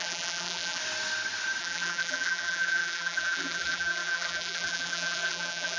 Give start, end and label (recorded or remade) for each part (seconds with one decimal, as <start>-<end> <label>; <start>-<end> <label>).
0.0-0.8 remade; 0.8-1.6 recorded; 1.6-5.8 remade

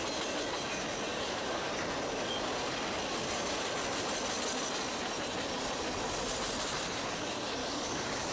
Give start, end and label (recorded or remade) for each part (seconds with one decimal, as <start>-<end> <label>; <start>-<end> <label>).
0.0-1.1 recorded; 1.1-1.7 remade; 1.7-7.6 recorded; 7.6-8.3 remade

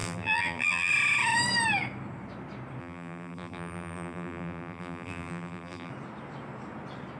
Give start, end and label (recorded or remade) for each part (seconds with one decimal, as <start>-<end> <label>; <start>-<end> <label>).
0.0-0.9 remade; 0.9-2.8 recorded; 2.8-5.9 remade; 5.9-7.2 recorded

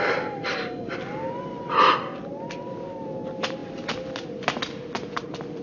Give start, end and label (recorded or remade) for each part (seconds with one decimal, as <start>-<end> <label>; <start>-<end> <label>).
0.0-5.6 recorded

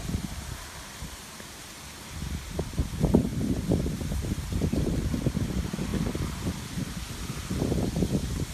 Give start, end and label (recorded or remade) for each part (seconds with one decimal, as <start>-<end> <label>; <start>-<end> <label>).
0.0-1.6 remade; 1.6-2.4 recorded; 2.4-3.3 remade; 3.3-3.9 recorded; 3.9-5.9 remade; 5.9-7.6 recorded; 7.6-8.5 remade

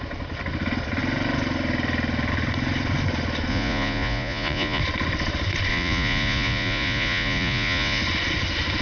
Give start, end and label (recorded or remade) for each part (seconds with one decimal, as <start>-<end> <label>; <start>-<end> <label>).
0.0-3.5 recorded; 3.5-4.8 remade; 4.8-5.7 recorded; 5.7-8.0 remade; 8.0-8.8 recorded